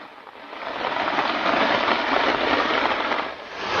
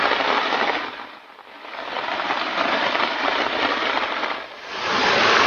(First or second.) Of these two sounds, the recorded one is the first